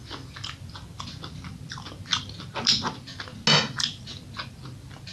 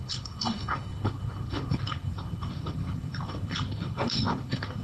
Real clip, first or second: first